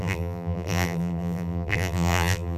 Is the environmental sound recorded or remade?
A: remade